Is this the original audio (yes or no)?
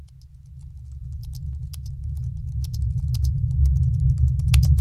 yes